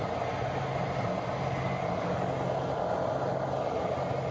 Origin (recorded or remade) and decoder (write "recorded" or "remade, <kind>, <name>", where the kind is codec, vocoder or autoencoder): recorded